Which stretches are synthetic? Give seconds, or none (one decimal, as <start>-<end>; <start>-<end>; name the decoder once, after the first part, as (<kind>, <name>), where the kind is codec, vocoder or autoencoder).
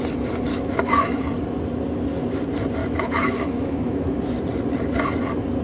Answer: 0.5-1.2 (autoencoder, DAC-VAE); 2.8-4.2